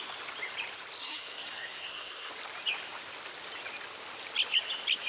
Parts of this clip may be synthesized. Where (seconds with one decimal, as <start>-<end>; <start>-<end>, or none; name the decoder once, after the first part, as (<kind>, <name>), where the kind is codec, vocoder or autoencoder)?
1.0-2.3 (codec, SNAC)